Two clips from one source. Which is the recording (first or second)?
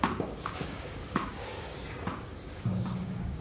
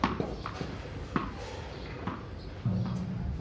second